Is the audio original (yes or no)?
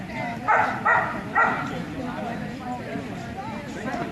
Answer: yes